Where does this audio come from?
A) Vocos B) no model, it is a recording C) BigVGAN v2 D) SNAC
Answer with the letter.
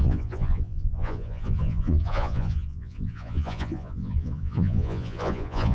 A